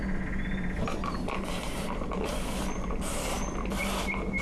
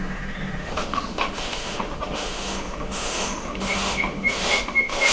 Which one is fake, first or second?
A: second